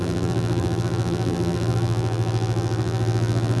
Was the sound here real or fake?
fake